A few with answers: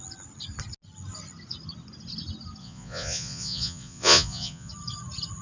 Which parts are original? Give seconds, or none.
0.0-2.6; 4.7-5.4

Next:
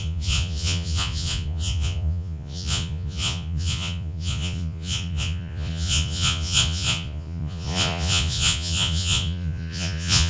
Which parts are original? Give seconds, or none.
none

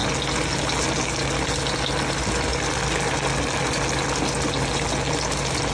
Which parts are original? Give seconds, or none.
0.0-5.7

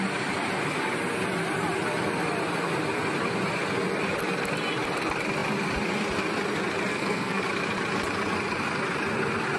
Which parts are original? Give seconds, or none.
0.0-6.9; 7.4-9.6

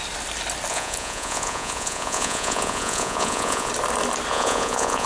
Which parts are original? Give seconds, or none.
0.0-0.7; 3.7-4.3

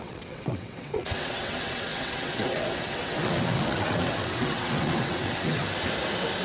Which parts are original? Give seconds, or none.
5.6-6.4